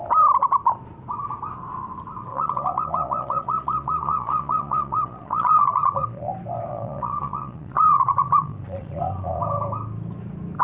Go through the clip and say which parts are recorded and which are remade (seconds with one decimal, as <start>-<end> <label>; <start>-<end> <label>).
0.0-2.3 recorded; 2.3-6.3 remade; 6.3-6.7 recorded; 6.7-9.4 remade; 9.4-10.6 recorded